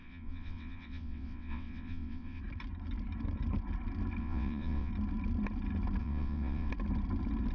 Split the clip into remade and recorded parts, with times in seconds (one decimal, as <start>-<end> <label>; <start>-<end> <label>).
0.0-2.4 remade; 2.4-4.2 recorded; 4.2-4.9 remade; 4.9-6.0 recorded; 6.0-6.7 remade; 6.7-7.5 recorded